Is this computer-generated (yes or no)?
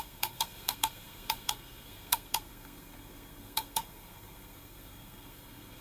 yes